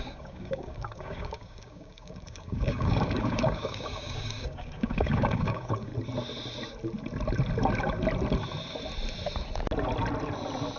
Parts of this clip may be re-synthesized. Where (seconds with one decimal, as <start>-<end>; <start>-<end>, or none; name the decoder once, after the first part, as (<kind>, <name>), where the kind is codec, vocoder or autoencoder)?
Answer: 0.0-5.9 (codec, DAC)